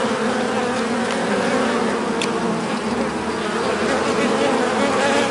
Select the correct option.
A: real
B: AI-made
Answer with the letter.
A